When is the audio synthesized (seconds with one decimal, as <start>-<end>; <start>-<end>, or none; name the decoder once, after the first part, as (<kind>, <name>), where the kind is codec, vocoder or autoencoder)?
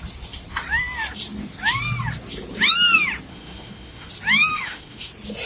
3.3-4.1 (autoencoder, DAC-VAE); 4.5-5.1